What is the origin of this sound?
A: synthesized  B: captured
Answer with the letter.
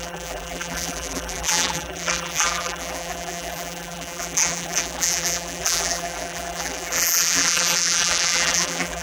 A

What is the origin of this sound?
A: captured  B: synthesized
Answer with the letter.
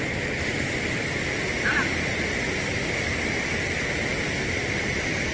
A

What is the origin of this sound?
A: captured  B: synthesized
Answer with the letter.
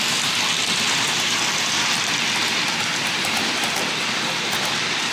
A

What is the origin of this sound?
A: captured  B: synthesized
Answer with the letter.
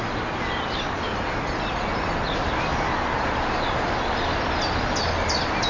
A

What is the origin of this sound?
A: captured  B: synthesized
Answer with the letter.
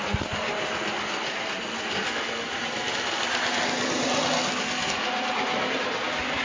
A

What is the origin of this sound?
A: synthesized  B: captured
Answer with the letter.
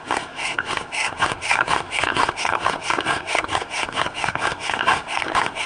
A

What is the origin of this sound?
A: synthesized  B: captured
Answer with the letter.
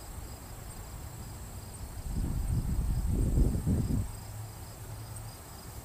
B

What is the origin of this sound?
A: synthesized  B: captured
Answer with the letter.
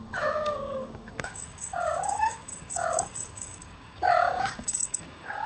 A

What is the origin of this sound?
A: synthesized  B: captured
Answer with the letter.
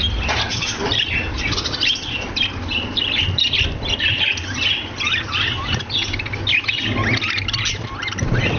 B